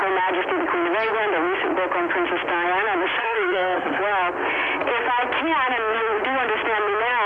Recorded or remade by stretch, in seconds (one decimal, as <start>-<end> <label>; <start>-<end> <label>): 0.0-3.2 recorded; 3.2-4.0 remade; 4.0-7.3 recorded